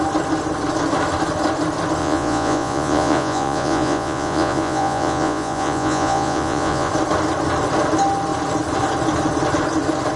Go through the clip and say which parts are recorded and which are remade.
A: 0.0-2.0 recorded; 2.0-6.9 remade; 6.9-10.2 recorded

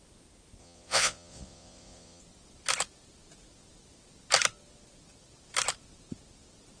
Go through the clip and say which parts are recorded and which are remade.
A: 0.0-0.6 recorded; 0.6-2.2 remade; 2.2-6.8 recorded

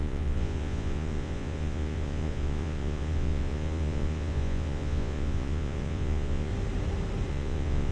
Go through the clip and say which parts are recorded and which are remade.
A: 0.0-6.5 remade; 6.5-7.3 recorded; 7.3-7.9 remade

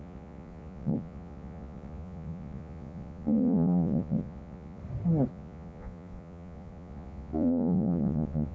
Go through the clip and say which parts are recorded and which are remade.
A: 0.0-4.8 remade; 4.8-5.3 recorded; 5.3-8.5 remade

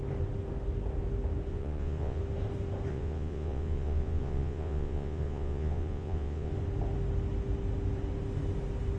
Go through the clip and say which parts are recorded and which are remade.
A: 0.0-1.5 recorded; 1.5-2.2 remade; 2.2-2.9 recorded; 2.9-6.5 remade; 6.5-9.0 recorded